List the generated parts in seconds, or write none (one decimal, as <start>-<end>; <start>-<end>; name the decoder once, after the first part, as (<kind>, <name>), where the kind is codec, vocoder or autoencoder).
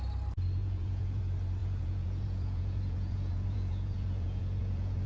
0.6-1.2 (vocoder, Vocos); 1.6-5.1